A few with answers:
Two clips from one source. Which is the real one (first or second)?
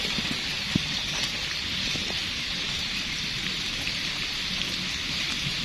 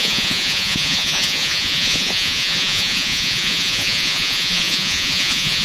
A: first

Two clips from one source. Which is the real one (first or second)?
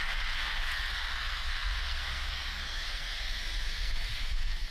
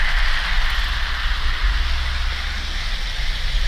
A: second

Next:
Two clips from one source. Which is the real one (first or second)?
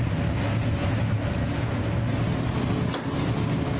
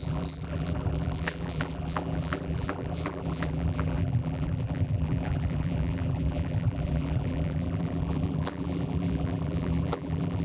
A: first